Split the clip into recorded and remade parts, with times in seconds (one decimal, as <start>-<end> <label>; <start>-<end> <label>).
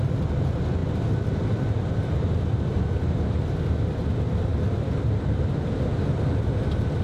0.0-7.0 recorded